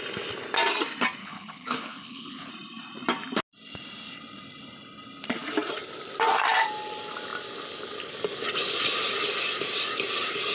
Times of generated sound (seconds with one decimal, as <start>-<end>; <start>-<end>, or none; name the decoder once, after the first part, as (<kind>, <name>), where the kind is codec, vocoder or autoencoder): 1.2-2.5 (codec, HILCodec)